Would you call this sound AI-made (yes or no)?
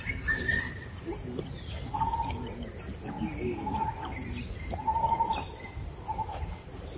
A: no